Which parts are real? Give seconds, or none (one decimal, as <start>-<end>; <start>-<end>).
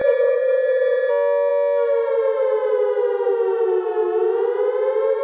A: 1.1-5.2